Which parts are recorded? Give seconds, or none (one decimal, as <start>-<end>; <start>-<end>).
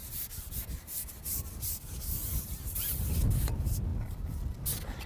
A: 3.1-3.9